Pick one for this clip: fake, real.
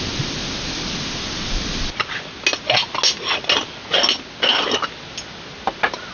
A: real